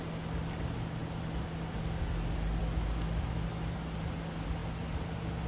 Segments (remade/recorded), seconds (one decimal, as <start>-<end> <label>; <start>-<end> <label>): 0.0-5.5 recorded